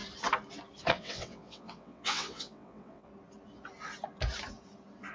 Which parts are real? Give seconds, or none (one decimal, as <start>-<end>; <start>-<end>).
0.0-0.9; 3.1-5.1